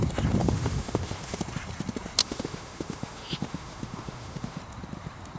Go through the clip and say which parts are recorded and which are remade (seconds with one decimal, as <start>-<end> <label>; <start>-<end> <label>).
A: 0.0-0.4 recorded; 0.4-1.4 remade; 1.4-2.2 recorded; 2.2-4.6 remade; 4.6-5.4 recorded